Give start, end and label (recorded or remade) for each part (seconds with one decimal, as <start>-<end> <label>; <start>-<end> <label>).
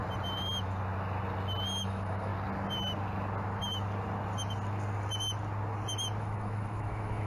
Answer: 0.0-1.8 recorded; 1.8-2.3 remade; 2.3-6.2 recorded; 6.2-7.3 remade